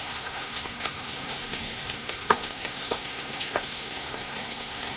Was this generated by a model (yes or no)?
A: yes